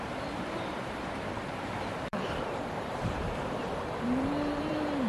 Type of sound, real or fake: fake